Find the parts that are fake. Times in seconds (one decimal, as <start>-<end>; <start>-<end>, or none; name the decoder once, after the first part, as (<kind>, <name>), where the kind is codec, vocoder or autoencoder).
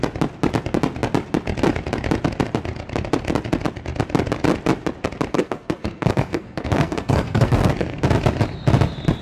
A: 5.3-8.0 (codec, SNAC)